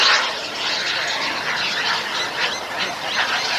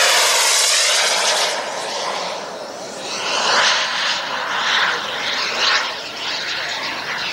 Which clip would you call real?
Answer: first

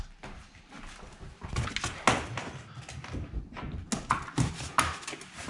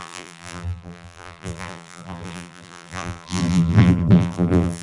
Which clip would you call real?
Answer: first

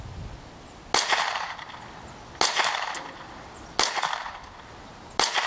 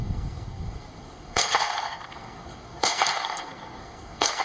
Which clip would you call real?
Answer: first